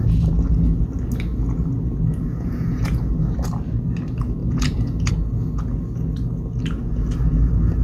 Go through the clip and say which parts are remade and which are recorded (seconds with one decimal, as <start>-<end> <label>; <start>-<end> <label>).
0.0-1.3 recorded; 1.3-3.0 remade; 3.0-4.4 recorded; 4.4-5.1 remade; 5.1-7.8 recorded